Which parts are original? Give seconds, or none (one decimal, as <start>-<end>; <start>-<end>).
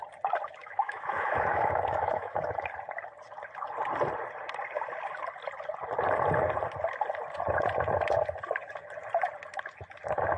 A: 0.0-0.6; 2.5-10.4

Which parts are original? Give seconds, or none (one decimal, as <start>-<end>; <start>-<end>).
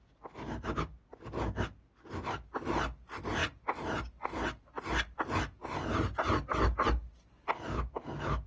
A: 0.0-8.5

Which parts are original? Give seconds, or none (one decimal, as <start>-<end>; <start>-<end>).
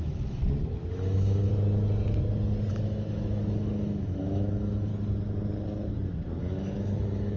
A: 0.4-0.9; 1.5-2.7; 4.9-6.4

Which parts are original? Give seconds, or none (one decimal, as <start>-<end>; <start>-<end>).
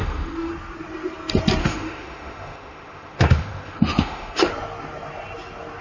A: 0.5-1.6; 4.5-5.8